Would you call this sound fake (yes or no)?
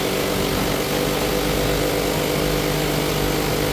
no